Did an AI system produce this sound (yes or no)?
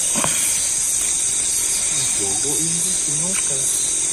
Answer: no